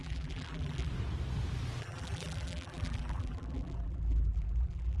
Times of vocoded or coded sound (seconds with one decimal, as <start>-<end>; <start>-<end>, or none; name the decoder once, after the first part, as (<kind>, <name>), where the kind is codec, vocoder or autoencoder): 0.0-0.9 (vocoder, BigVGAN v2); 1.8-5.0